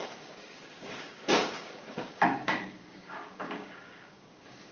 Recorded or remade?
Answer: remade